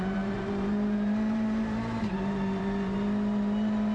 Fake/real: fake